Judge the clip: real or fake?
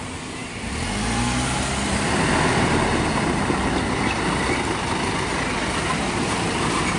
real